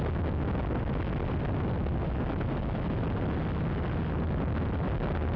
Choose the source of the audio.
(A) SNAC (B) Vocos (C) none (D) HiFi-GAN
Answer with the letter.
C